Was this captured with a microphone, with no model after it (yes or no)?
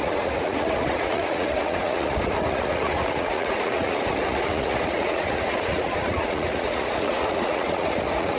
no